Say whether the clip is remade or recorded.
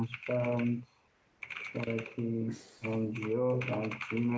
recorded